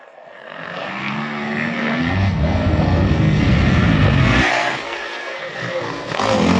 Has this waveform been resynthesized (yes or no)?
yes